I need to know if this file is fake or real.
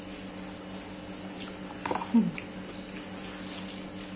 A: real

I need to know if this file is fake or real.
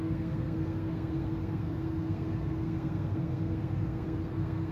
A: fake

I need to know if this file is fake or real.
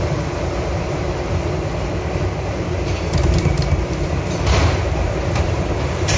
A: fake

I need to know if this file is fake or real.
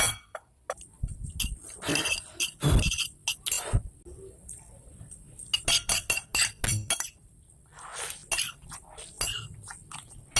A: real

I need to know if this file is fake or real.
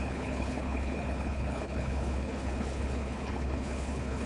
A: fake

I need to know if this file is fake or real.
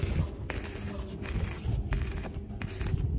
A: real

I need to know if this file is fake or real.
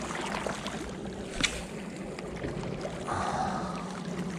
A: real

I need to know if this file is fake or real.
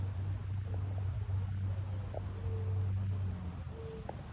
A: real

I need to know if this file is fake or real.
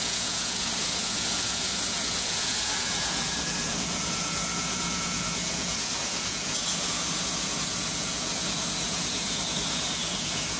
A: fake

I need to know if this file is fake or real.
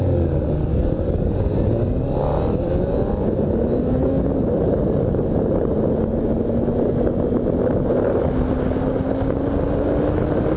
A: real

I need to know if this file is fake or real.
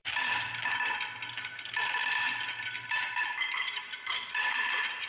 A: fake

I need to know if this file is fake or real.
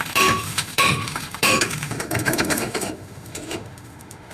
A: fake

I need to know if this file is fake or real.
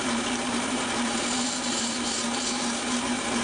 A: fake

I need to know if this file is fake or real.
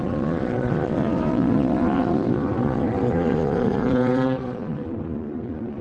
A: fake